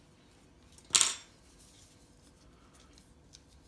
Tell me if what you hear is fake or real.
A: real